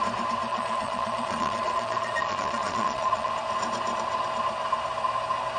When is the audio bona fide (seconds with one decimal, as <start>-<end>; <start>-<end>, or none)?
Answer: 0.0-0.5; 3.3-5.6